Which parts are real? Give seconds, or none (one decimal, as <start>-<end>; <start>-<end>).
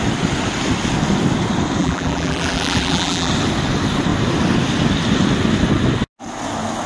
0.0-1.8; 3.3-6.9